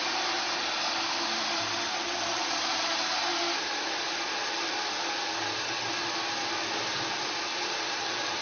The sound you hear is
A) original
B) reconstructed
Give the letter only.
A